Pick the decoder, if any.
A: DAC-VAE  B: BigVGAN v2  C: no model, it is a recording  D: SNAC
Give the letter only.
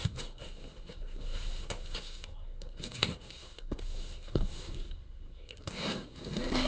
D